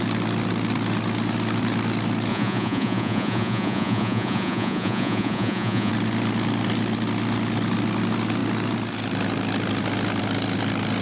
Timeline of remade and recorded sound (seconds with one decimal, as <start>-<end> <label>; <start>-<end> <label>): 0.0-2.3 recorded; 2.3-5.9 remade; 5.9-11.0 recorded